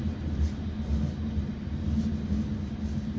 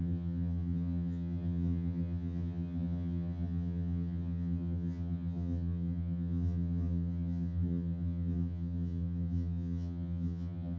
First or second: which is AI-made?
second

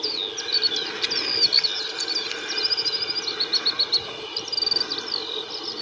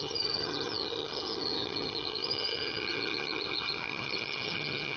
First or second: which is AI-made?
second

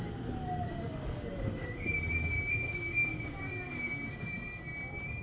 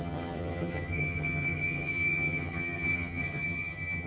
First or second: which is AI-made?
second